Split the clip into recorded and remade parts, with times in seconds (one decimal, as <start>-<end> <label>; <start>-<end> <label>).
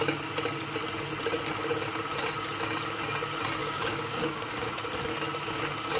0.0-3.6 recorded; 3.6-4.7 remade; 4.7-6.0 recorded